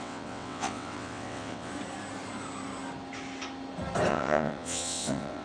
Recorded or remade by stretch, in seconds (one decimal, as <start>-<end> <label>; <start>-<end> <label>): 0.0-1.7 remade; 1.7-4.1 recorded; 4.1-5.4 remade